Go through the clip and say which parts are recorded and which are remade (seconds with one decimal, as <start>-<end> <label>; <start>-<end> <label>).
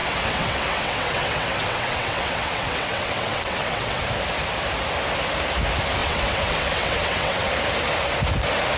0.0-4.0 remade; 4.0-6.0 recorded; 6.0-7.5 remade; 7.5-8.8 recorded